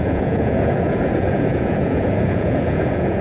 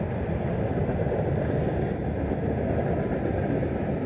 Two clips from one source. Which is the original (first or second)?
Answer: second